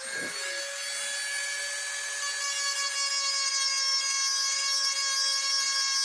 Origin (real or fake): real